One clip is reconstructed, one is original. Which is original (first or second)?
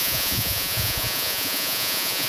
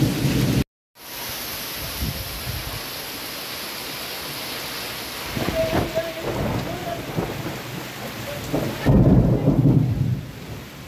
second